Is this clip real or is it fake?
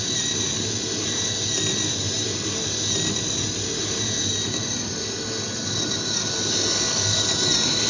real